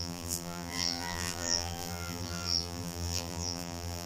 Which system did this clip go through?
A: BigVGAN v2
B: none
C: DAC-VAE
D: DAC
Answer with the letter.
A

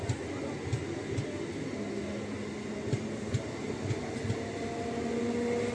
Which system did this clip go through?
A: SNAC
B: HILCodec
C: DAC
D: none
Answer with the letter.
D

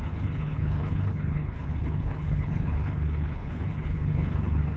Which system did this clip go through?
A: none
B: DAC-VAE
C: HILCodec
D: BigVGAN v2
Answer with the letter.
C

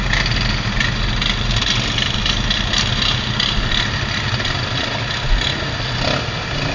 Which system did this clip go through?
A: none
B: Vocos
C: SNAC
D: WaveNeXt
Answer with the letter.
A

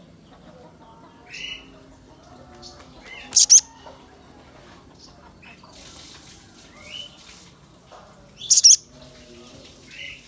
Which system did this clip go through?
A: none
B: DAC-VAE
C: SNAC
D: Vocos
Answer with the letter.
A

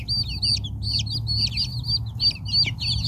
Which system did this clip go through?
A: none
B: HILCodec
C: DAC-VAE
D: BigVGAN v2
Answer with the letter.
A